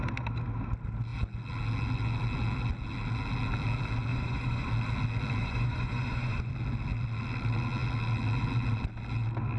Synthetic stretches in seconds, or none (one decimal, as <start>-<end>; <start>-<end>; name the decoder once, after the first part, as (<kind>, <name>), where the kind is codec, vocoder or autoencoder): 4.1-4.7 (vocoder, Vocos); 5.4-6.5